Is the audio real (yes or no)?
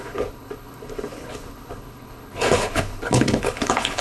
no